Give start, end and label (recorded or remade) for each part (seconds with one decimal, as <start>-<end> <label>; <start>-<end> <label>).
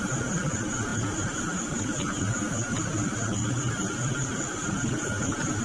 0.0-0.9 recorded; 0.9-1.8 remade; 1.8-5.6 recorded